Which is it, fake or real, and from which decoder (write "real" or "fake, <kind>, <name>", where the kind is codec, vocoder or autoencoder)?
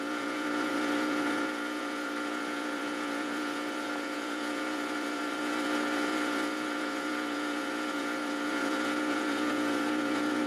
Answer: fake, vocoder, Vocos